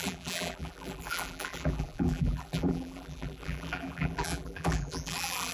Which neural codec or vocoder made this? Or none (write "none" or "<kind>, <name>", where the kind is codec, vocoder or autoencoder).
vocoder, BigVGAN v2